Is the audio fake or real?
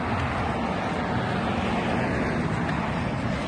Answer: real